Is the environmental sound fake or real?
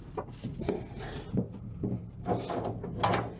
real